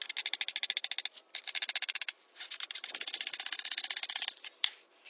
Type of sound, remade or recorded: recorded